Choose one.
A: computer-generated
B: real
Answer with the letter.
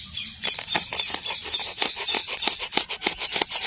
B